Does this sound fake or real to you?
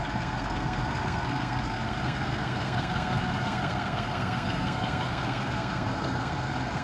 fake